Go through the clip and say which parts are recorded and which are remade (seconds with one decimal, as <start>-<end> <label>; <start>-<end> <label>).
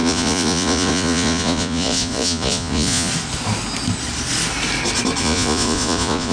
0.0-3.1 remade; 3.1-5.2 recorded; 5.2-6.3 remade